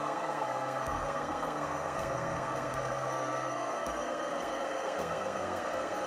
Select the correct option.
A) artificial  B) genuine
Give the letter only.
A